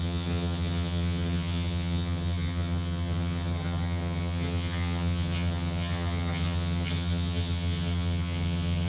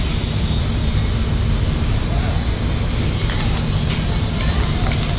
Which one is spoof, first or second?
first